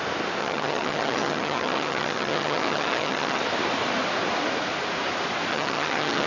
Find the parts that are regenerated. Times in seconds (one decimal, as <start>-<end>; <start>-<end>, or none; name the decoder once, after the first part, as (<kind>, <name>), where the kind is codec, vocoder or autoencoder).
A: 0.4-3.4 (vocoder, HiFi-GAN); 5.5-6.3